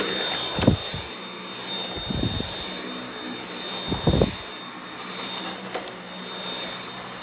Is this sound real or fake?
real